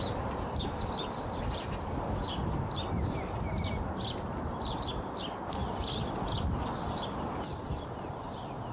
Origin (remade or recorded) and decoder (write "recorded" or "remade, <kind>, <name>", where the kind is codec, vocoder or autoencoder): recorded